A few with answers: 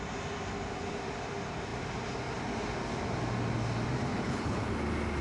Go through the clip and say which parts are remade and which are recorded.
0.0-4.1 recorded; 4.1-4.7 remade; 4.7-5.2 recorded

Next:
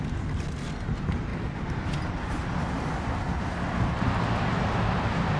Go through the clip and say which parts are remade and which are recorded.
0.0-5.4 recorded